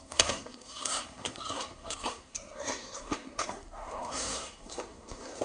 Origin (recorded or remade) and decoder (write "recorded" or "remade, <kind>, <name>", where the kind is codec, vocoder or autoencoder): remade, codec, SNAC